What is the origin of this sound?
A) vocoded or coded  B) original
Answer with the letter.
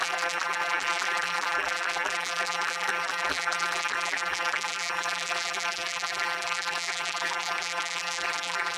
A